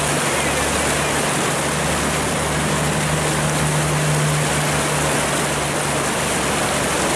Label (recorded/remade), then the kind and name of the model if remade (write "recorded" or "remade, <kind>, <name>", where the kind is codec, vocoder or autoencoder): recorded